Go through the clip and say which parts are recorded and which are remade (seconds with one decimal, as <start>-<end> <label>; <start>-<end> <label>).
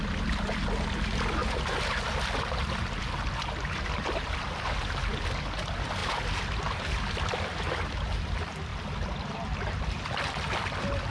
0.0-1.4 remade; 1.4-3.9 recorded; 3.9-6.0 remade; 6.0-6.5 recorded; 6.5-8.7 remade; 8.7-9.8 recorded; 9.8-11.1 remade